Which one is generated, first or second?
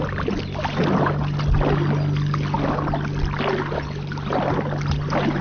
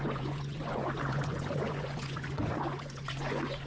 second